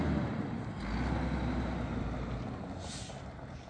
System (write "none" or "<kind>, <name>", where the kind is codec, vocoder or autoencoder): none